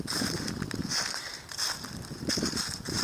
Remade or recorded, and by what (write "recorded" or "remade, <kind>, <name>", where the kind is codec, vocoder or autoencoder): recorded